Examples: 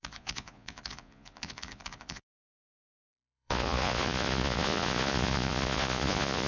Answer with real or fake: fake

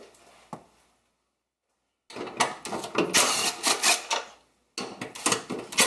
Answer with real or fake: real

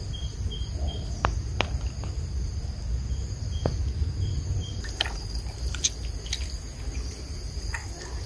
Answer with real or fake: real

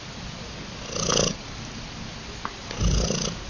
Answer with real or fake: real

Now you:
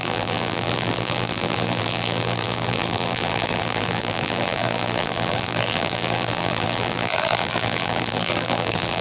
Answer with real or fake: fake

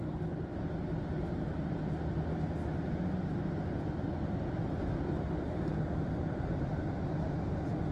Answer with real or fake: real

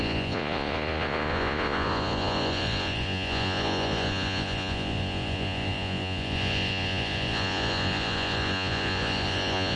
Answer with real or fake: fake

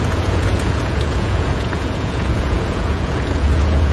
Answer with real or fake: fake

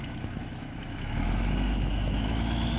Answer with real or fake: fake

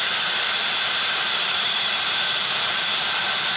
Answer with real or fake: real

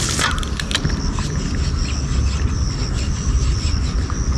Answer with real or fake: real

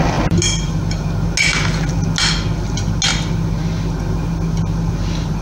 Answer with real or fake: real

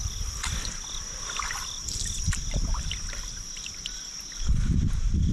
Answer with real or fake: fake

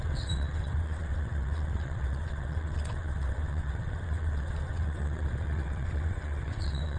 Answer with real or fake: fake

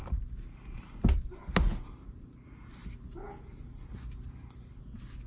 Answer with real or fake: real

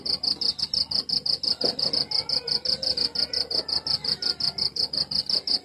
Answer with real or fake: real